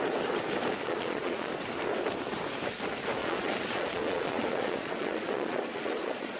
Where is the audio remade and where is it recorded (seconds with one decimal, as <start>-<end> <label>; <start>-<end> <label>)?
0.0-0.8 recorded; 0.8-1.5 remade; 1.5-3.2 recorded; 3.2-6.4 remade